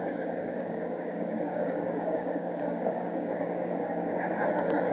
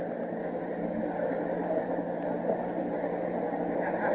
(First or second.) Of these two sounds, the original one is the second